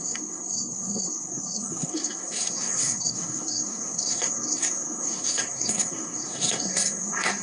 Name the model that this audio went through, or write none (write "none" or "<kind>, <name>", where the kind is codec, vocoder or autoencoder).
codec, SNAC